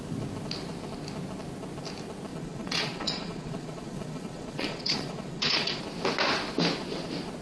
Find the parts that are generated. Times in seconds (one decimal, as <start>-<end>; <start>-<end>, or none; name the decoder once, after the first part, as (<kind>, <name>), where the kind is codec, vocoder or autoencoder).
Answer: 2.3-5.8 (vocoder, Vocos)